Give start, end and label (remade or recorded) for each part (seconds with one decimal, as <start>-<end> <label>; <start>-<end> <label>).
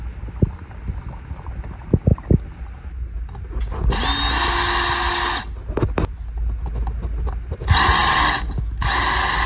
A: 0.0-8.0 recorded; 8.0-8.6 remade; 8.6-9.5 recorded